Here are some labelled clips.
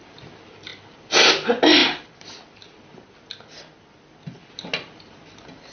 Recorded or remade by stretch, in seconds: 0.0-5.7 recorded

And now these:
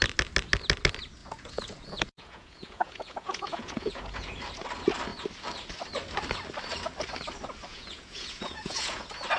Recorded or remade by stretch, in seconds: 0.0-1.2 recorded; 1.2-4.4 remade; 4.4-7.7 recorded; 7.7-9.0 remade; 9.0-9.4 recorded